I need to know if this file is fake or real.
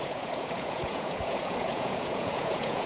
fake